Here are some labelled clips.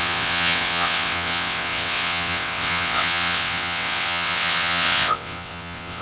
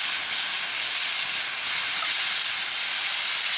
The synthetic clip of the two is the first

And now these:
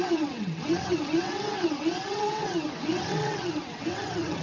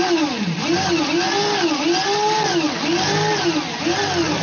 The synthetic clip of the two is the first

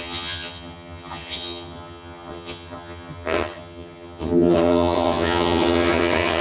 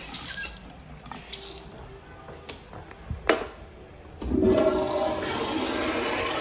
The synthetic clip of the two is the first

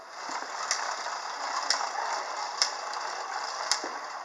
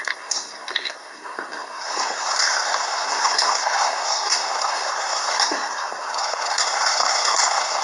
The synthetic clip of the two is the second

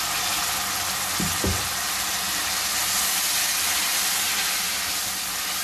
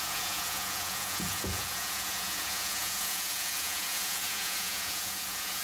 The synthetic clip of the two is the second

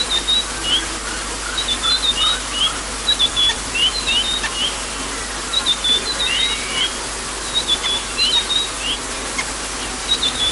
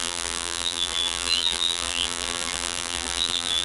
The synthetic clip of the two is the second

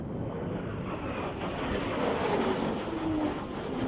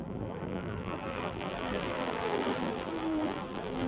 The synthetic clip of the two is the second